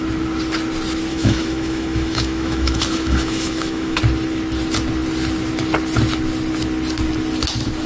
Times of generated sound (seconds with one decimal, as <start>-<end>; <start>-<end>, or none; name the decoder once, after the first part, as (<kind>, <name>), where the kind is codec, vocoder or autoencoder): 1.1-4.0 (autoencoder, DAC-VAE)